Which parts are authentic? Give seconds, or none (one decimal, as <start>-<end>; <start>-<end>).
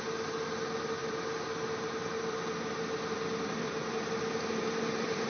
0.0-5.3